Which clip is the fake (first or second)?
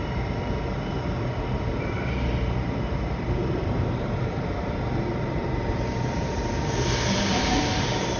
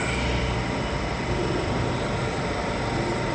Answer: first